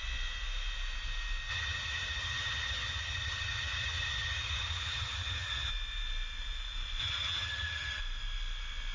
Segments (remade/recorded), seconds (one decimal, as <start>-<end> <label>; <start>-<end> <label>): 0.0-1.5 recorded; 1.5-5.7 remade; 5.7-7.0 recorded; 7.0-8.0 remade; 8.0-8.9 recorded